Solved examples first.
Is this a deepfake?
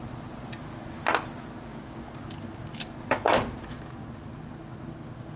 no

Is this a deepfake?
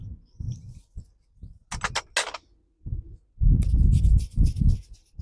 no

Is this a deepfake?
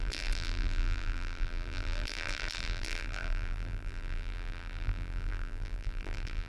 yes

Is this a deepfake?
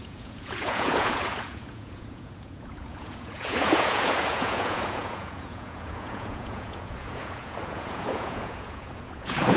yes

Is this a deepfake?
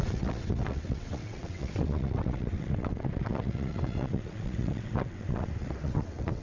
yes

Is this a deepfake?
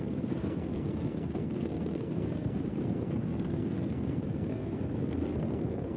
yes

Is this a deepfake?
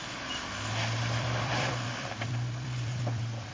yes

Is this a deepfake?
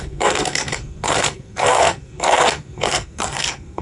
yes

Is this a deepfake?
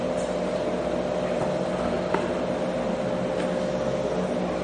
no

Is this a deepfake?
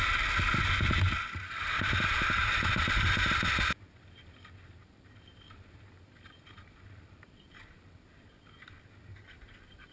no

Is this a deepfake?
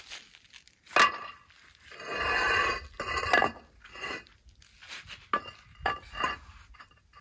no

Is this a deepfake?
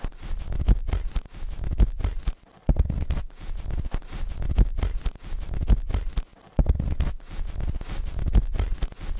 no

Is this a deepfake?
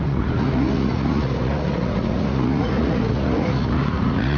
yes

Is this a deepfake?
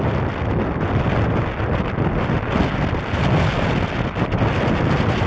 no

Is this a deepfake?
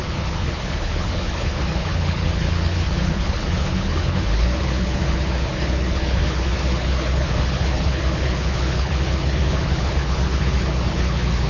yes